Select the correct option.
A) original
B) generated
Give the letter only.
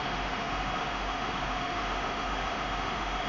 B